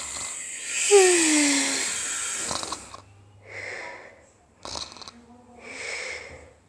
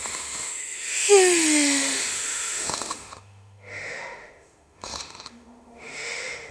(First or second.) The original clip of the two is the first